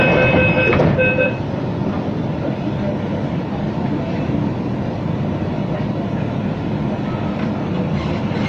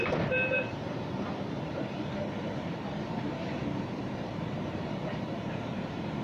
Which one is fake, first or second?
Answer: second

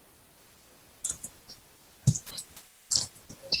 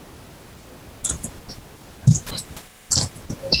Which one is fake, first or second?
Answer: first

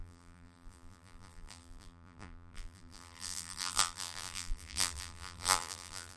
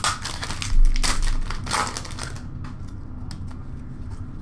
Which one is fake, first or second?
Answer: first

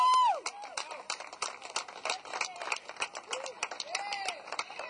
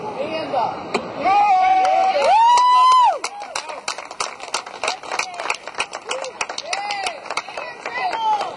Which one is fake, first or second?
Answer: first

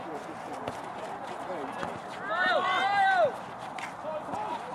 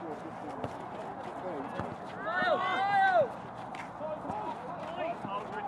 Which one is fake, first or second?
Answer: first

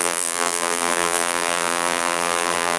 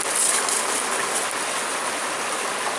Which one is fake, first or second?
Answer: first